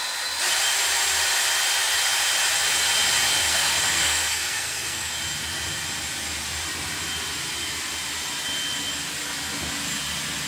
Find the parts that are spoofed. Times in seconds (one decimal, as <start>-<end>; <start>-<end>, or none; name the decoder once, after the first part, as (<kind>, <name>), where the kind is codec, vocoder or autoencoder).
3.5-5.2 (codec, SNAC)